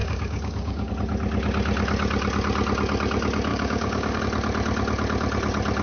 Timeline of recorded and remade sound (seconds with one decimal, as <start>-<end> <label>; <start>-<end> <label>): 0.0-0.9 remade; 0.9-3.5 recorded; 3.5-4.2 remade; 4.2-5.8 recorded